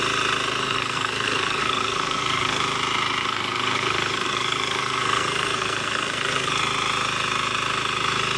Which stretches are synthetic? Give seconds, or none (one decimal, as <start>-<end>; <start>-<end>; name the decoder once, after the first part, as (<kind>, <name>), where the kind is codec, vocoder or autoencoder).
0.6-2.6 (codec, SNAC); 3.2-6.5